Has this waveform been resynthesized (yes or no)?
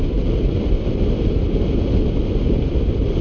no